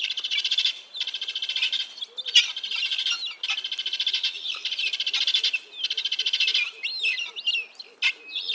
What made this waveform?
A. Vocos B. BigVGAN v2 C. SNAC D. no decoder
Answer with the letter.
D